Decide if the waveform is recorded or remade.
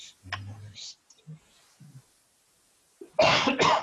recorded